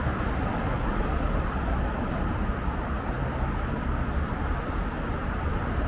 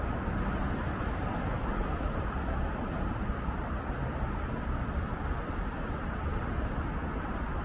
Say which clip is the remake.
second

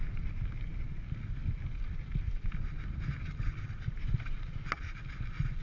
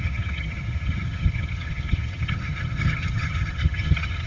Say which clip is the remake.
second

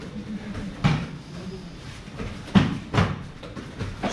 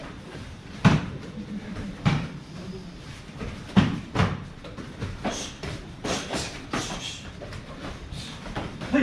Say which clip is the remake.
second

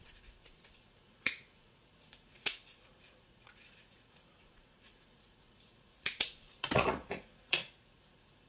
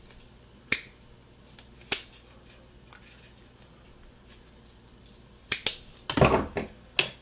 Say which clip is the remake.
first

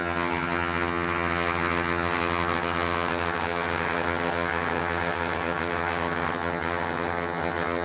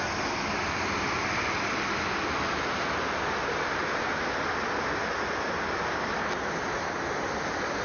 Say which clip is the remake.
first